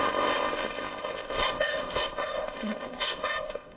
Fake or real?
fake